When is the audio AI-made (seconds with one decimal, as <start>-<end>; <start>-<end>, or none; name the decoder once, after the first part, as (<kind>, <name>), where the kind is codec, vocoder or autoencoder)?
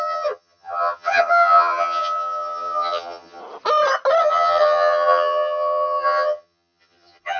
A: 0.0-3.4 (vocoder, HiFi-GAN); 4.2-7.4